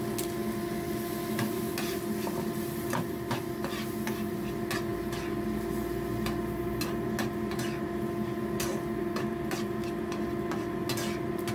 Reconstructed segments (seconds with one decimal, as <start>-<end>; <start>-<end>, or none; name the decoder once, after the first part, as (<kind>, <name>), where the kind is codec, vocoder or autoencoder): none